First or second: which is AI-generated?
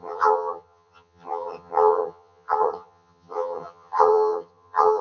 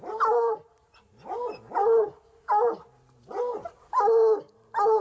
first